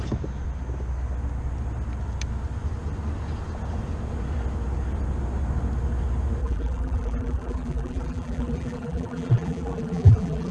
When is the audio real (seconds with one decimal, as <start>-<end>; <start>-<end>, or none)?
0.0-6.4